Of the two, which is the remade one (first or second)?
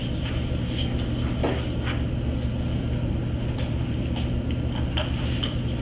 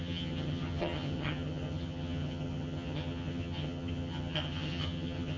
second